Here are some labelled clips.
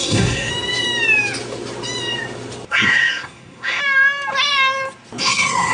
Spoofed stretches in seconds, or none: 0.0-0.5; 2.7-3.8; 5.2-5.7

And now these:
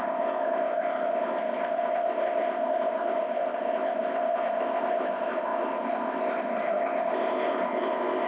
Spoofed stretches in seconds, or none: 0.0-8.3

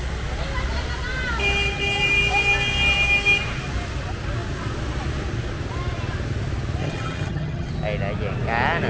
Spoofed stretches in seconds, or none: 6.8-7.7

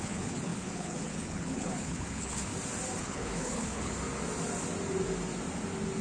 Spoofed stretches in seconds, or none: 0.0-2.5; 3.0-3.9